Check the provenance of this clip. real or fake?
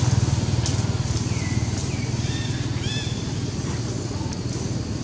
real